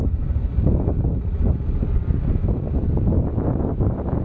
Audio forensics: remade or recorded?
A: recorded